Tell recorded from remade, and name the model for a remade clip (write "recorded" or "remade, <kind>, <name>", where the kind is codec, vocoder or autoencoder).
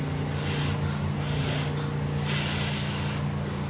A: recorded